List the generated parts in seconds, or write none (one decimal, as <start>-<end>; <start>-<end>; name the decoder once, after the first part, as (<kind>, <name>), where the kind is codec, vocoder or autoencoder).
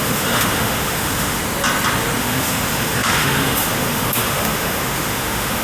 0.0-1.4 (autoencoder, DAC-VAE); 2.2-5.6